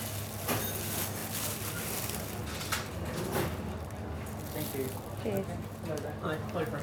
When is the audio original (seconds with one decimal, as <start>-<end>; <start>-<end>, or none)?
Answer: 0.0-6.8

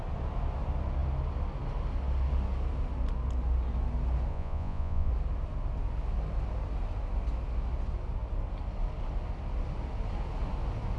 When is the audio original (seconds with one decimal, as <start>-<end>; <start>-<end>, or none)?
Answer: 0.0-4.3; 5.1-11.0

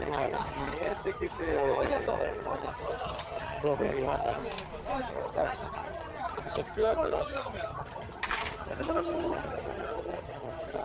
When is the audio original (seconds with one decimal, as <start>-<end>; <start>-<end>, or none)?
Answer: 4.4-5.1

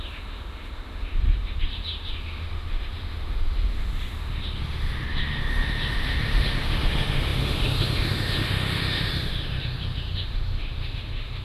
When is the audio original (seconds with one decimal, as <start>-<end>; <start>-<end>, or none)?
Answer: none

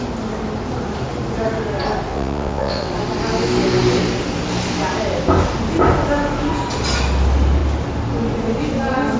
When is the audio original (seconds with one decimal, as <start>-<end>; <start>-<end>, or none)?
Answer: 0.0-2.1; 2.9-9.2

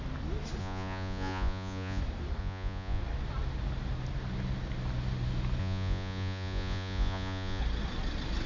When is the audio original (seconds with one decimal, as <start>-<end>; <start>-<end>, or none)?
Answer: 0.0-0.6; 2.0-2.4; 3.0-5.6; 7.6-8.5

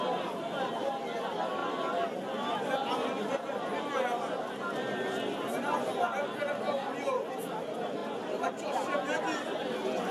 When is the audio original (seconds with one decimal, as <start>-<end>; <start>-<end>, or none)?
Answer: 0.0-10.1

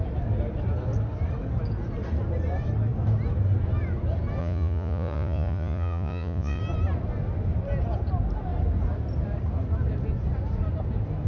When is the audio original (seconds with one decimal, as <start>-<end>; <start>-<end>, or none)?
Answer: 0.0-4.4; 6.6-11.3